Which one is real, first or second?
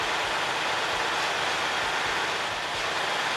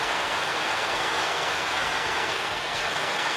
first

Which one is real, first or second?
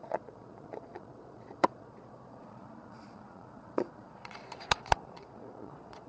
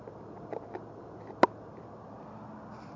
second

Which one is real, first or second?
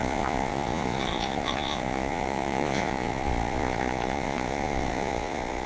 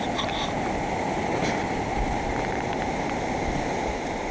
second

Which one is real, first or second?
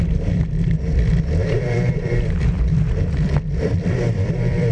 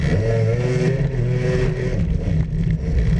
second